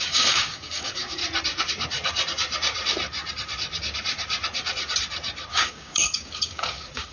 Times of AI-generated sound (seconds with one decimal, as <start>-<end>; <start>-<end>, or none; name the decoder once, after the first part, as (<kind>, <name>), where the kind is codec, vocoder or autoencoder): 0.0-1.2 (codec, DAC); 5.5-7.1